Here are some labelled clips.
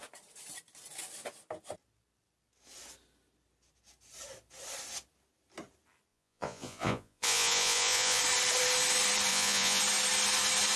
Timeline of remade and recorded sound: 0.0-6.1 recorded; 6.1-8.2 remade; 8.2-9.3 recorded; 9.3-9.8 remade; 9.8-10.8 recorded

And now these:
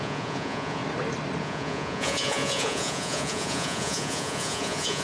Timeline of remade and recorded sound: 0.0-0.8 remade; 0.8-1.4 recorded; 1.4-5.0 remade

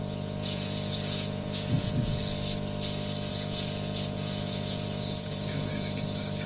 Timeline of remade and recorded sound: 0.0-2.1 remade; 2.1-3.3 recorded; 3.3-6.5 remade

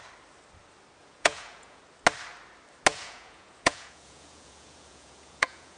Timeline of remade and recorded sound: 0.0-1.0 recorded; 1.0-1.8 remade; 1.8-2.9 recorded; 2.9-5.8 remade